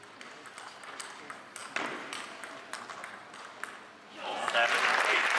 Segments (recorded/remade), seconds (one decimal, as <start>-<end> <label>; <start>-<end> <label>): 0.0-5.4 recorded